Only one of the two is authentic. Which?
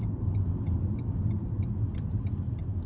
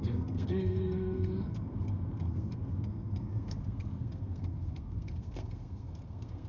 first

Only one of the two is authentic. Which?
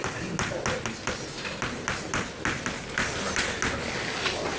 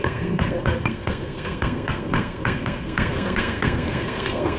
first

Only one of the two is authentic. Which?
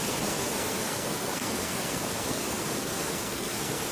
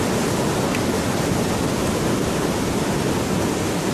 second